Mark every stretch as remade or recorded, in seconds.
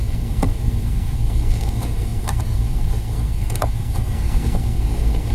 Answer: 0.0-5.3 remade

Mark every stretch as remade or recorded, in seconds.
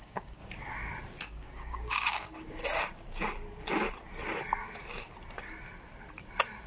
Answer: 0.0-0.4 remade; 0.4-1.2 recorded; 1.2-2.6 remade; 2.6-6.7 recorded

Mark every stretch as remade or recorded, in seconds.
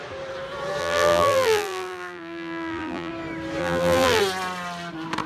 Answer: 0.0-0.8 recorded; 0.8-3.1 remade; 3.1-3.6 recorded; 3.6-4.2 remade; 4.2-5.3 recorded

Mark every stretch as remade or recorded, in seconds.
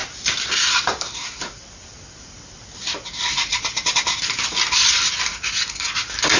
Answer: 0.0-6.4 recorded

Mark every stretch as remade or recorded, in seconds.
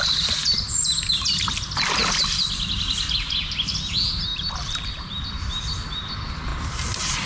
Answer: 0.0-2.0 recorded; 2.0-2.7 remade; 2.7-4.3 recorded; 4.3-5.2 remade; 5.2-6.5 recorded; 6.5-7.3 remade